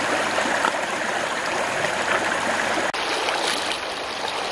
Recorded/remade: recorded